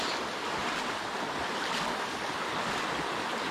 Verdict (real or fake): real